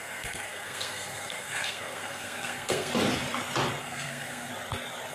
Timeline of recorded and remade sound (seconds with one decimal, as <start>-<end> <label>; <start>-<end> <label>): 0.0-2.9 remade; 2.9-3.8 recorded; 3.8-4.5 remade; 4.5-5.1 recorded